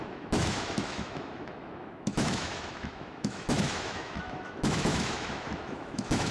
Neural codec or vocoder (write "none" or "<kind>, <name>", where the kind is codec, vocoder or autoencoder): autoencoder, DAC-VAE